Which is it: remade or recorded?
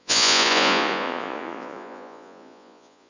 remade